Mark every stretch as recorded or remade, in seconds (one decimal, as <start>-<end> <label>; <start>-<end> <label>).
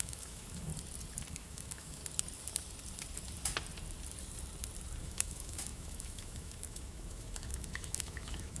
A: 0.0-0.7 remade; 0.7-1.3 recorded; 1.3-2.0 remade; 2.0-5.0 recorded; 5.0-8.6 remade